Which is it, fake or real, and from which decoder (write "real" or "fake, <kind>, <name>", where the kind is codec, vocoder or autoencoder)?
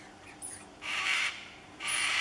fake, vocoder, BigVGAN v2